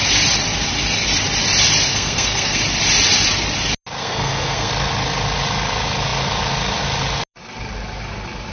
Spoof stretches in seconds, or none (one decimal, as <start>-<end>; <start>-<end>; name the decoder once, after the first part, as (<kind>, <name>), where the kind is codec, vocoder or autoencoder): 1.9-2.6 (codec, SNAC); 4.0-4.7